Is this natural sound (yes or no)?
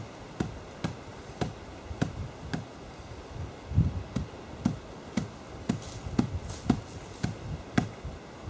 yes